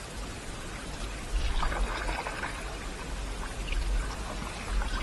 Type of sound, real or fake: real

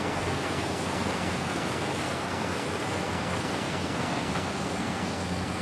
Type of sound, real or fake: fake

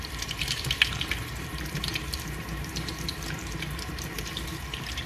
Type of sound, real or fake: fake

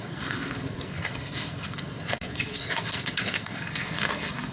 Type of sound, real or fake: fake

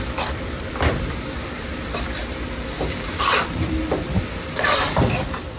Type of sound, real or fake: fake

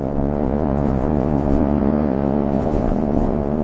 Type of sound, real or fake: fake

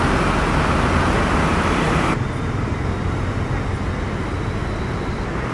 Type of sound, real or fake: real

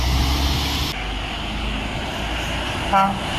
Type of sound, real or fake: real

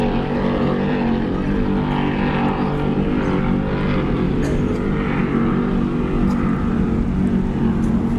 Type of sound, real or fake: real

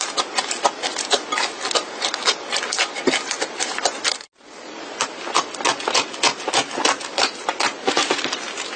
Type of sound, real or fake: real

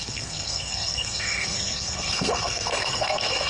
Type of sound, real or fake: fake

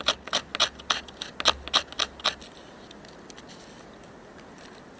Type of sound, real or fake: real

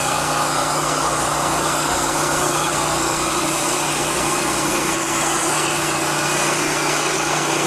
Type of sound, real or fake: fake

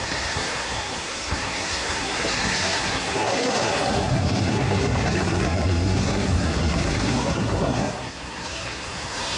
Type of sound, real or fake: fake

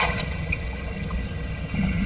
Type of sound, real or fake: fake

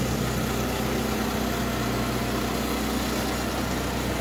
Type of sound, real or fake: real